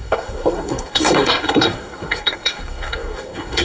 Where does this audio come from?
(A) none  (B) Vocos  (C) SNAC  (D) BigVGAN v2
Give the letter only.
C